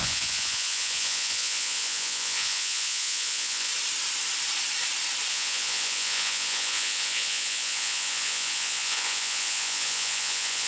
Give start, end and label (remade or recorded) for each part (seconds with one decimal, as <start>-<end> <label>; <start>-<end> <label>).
0.0-3.7 remade; 3.7-5.3 recorded; 5.3-10.7 remade